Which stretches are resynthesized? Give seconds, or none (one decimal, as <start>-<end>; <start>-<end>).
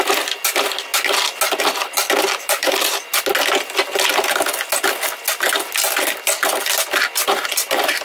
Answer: 0.0-0.9; 1.6-3.1; 7.1-8.0